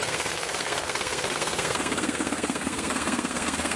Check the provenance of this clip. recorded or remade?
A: remade